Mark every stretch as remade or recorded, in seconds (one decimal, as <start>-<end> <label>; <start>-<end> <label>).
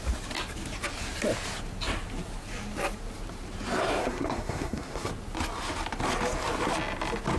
0.0-4.0 recorded; 4.0-5.1 remade; 5.1-7.4 recorded